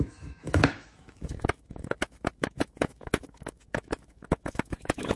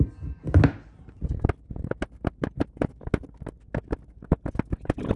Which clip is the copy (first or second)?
first